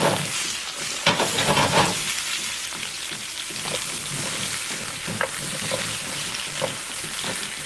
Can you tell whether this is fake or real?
real